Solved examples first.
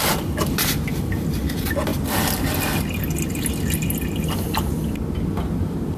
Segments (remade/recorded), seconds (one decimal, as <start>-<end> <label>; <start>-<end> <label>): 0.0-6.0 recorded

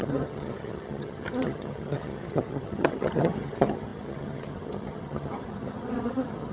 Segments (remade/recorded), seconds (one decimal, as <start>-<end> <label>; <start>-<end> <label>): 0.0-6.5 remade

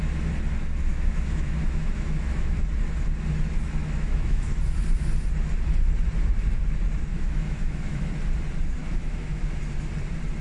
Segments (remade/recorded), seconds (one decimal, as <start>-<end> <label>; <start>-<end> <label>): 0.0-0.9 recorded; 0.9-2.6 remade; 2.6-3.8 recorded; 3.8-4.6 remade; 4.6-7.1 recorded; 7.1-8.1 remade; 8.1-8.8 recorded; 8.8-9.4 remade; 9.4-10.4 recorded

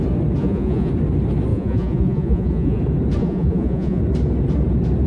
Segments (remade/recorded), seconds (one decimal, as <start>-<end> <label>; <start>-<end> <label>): 0.0-0.4 recorded; 0.4-0.9 remade; 0.9-1.5 recorded; 1.5-2.8 remade; 2.8-3.2 recorded; 3.2-4.0 remade; 4.0-5.1 recorded